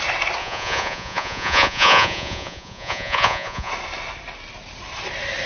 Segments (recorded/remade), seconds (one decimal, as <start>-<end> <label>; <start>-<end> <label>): 0.0-0.4 recorded; 0.4-3.7 remade; 3.7-5.5 recorded